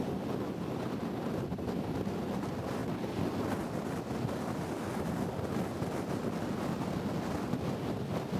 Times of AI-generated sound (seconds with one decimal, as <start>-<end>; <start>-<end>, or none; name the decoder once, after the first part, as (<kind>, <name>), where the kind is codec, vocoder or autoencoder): none